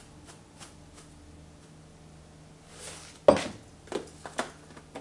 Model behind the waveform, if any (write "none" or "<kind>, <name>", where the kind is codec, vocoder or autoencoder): none